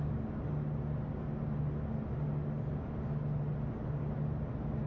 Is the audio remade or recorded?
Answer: recorded